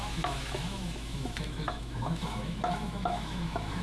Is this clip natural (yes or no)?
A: no